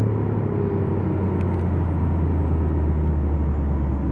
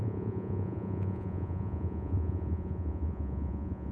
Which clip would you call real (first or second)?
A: first